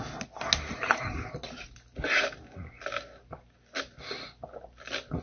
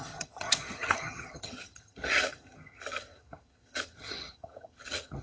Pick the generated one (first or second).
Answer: second